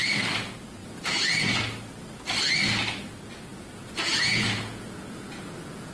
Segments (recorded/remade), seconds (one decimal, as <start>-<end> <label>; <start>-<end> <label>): 0.0-0.8 recorded; 0.8-1.6 remade; 1.6-3.5 recorded; 3.5-5.9 remade